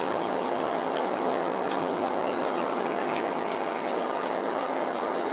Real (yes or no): no